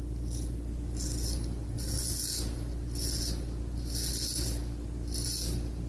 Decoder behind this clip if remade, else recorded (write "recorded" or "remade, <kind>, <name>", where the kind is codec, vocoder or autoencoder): recorded